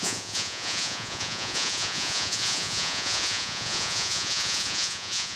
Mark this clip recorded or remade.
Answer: remade